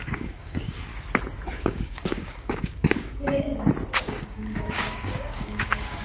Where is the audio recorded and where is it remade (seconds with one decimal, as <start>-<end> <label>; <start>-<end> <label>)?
0.0-0.9 remade; 0.9-1.6 recorded; 1.6-3.5 remade; 3.5-4.0 recorded; 4.0-6.0 remade